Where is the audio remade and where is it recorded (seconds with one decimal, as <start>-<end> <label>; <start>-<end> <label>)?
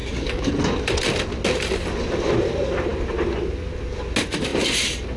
0.0-0.5 remade; 0.5-5.2 recorded